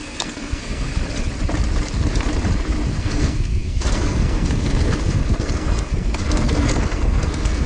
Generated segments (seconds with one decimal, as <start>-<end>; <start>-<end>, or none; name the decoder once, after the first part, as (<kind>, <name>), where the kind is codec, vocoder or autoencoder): 0.0-0.9 (codec, SNAC); 2.9-7.7